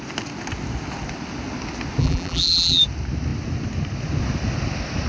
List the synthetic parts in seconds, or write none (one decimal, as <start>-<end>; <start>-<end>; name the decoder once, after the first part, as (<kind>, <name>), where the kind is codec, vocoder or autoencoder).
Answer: 2.0-2.8 (vocoder, BigVGAN v2)